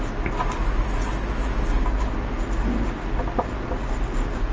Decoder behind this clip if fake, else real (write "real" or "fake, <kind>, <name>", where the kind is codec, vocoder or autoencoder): real